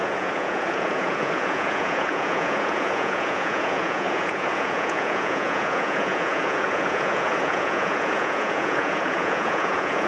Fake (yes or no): yes